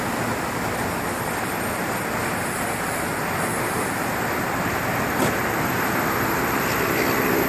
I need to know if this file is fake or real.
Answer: real